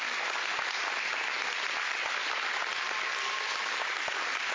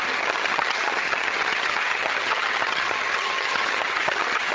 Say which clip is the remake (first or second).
second